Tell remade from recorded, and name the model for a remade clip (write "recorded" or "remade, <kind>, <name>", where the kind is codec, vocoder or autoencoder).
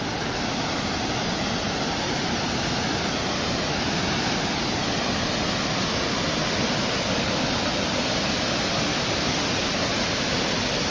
recorded